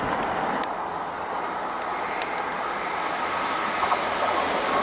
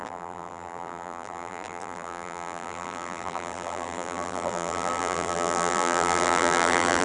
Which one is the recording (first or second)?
first